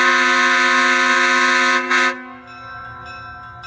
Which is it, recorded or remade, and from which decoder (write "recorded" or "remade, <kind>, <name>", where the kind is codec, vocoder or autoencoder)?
recorded